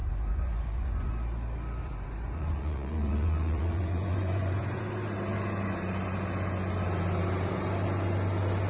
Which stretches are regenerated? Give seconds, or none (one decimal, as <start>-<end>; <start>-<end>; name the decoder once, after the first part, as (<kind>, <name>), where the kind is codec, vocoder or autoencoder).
0.0-1.1 (vocoder, Vocos); 1.8-4.8